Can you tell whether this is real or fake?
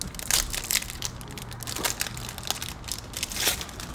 real